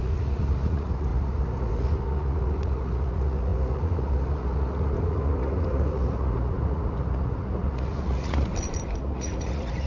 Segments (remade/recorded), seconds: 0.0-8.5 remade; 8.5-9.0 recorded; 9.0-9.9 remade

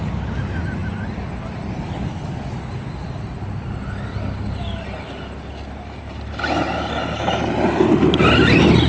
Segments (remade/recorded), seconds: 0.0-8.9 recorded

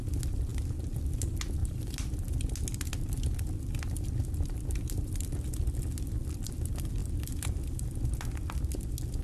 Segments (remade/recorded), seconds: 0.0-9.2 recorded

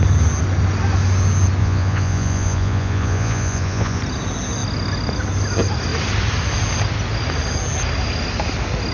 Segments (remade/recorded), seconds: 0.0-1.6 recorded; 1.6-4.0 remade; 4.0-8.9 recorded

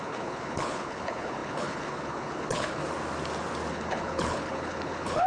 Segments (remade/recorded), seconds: 0.0-2.8 remade; 2.8-3.7 recorded; 3.7-5.3 remade

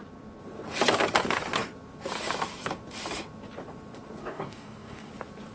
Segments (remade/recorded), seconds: 0.0-4.2 recorded; 4.2-5.1 remade; 5.1-5.5 recorded